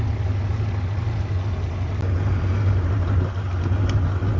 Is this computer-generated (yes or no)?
no